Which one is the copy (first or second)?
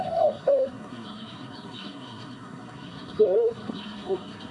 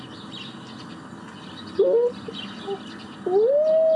first